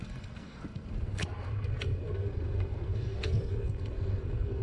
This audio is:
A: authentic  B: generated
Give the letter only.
B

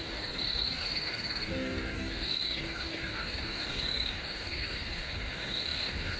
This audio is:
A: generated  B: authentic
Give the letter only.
A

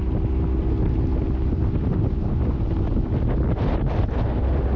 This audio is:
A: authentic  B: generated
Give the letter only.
A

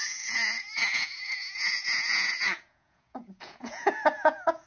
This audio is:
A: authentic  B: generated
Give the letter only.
B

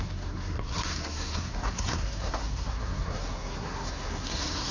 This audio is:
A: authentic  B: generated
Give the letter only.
B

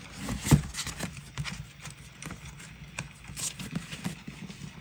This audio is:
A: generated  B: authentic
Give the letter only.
B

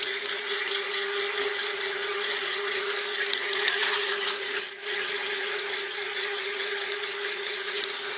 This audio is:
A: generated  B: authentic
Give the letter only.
A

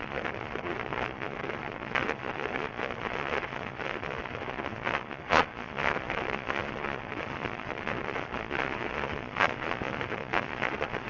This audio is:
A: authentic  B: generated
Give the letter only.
B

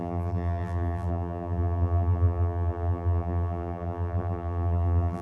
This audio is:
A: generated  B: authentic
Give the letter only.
A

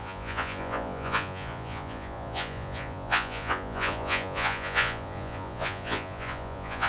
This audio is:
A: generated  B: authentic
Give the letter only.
A